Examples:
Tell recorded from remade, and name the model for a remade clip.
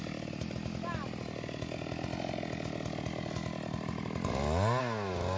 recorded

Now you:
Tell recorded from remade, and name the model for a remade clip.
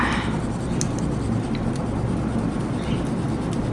recorded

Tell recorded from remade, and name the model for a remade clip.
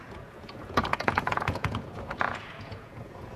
remade, vocoder, Vocos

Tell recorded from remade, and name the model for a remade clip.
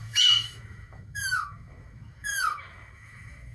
remade, autoencoder, DAC-VAE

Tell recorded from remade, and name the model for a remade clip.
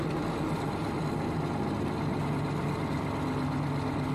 recorded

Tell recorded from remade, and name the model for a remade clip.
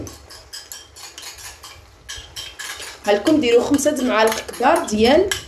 recorded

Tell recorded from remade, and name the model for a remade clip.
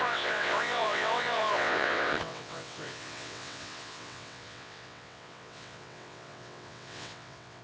remade, vocoder, WaveNeXt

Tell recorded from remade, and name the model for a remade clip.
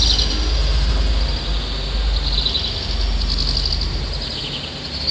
recorded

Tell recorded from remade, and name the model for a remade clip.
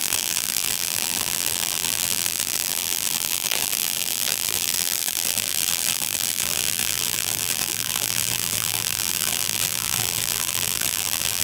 remade, vocoder, BigVGAN v2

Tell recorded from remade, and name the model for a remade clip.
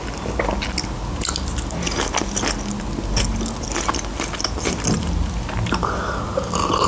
recorded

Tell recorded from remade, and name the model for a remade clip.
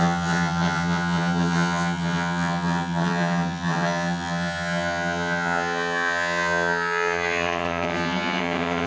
remade, vocoder, HiFi-GAN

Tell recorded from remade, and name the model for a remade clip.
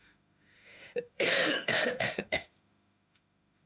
remade, autoencoder, DAC-VAE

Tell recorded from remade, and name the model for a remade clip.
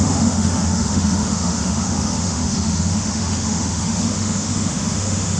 remade, autoencoder, DAC-VAE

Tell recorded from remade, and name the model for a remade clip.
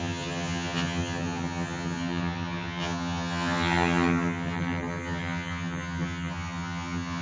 remade, vocoder, HiFi-GAN